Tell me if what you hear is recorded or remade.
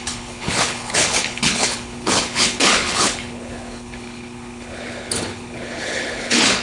remade